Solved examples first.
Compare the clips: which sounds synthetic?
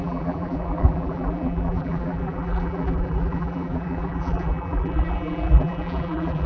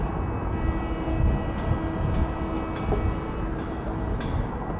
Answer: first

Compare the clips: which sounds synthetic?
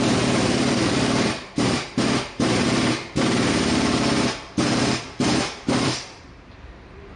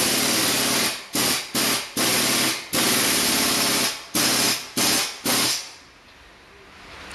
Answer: first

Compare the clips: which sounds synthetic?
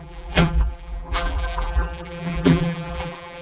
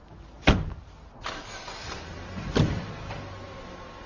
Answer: first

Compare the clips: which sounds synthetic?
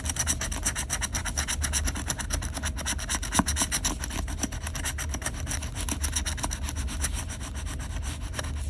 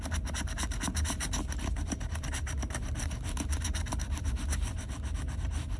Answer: second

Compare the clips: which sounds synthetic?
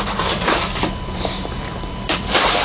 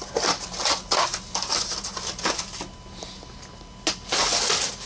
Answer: first